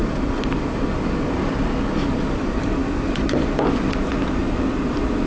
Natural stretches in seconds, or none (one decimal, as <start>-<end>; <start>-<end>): 0.0-5.3